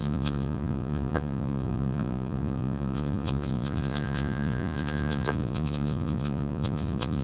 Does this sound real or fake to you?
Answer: fake